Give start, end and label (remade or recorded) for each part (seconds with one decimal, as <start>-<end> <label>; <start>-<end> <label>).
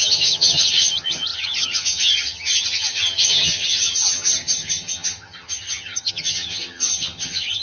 0.0-7.6 remade